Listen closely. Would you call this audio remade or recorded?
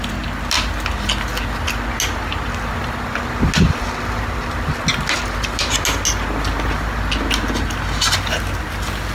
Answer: recorded